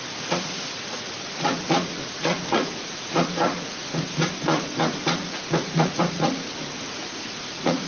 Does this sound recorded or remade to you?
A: remade